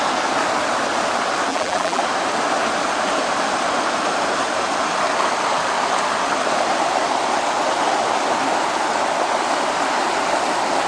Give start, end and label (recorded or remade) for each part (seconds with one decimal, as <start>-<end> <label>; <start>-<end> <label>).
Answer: 0.0-1.5 recorded; 1.5-2.0 remade; 2.0-10.9 recorded